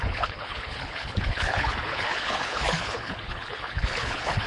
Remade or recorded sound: remade